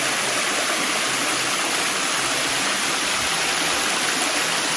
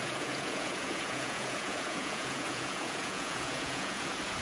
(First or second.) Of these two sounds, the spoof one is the second